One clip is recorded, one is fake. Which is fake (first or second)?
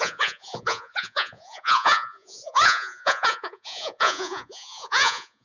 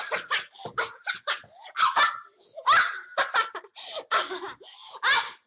first